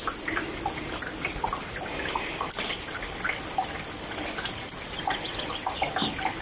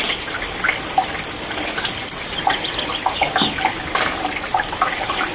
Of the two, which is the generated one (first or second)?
second